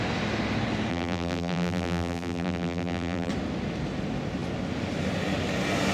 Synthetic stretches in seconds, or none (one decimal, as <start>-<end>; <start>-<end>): 0.9-3.3